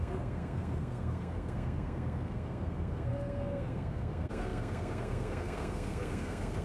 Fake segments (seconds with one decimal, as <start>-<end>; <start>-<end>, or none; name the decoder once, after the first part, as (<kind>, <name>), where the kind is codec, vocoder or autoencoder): 0.0-6.6 (codec, SNAC)